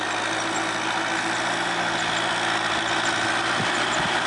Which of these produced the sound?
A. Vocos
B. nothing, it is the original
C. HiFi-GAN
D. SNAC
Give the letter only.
B